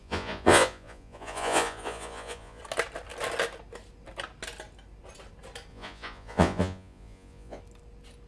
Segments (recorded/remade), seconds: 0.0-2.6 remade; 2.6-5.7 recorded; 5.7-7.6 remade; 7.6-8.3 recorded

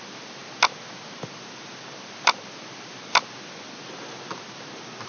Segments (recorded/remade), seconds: 0.0-5.1 recorded

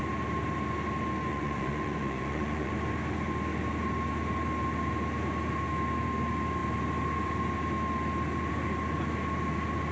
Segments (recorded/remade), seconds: 0.0-1.3 recorded; 1.3-2.7 remade; 2.7-9.9 recorded

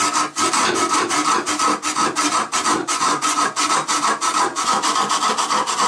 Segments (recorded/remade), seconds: 0.0-2.8 recorded; 2.8-3.7 remade; 3.7-4.5 recorded; 4.5-5.1 remade; 5.1-5.9 recorded

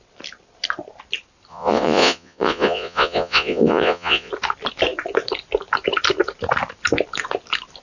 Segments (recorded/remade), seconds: 0.0-1.5 recorded; 1.5-4.3 remade; 4.3-7.8 recorded

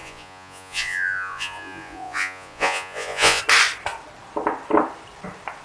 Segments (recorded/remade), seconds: 0.0-3.4 remade; 3.4-5.6 recorded

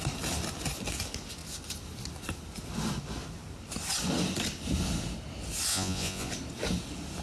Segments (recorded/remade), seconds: 0.0-5.7 recorded; 5.7-6.3 remade; 6.3-7.2 recorded

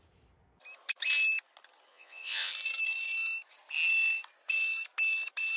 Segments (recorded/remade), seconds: 0.0-1.9 recorded; 1.9-2.5 remade; 2.5-5.6 recorded